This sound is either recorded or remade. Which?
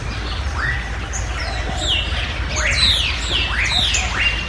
recorded